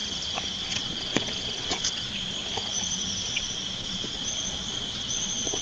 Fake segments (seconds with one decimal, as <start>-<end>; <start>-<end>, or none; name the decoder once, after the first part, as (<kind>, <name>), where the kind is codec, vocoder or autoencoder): 0.6-2.4 (vocoder, Vocos); 3.3-5.6